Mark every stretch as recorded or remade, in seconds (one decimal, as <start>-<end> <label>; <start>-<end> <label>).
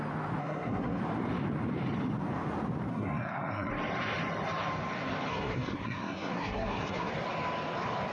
0.0-0.4 recorded; 0.4-1.0 remade; 1.0-2.9 recorded; 2.9-3.7 remade; 3.7-5.3 recorded; 5.3-7.1 remade; 7.1-8.1 recorded